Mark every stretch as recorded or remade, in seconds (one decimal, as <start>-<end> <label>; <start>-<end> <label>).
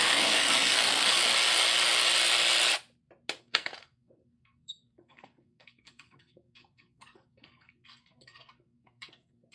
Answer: 0.0-1.2 remade; 1.2-3.4 recorded; 3.4-9.5 remade